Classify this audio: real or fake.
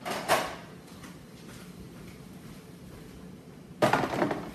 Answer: real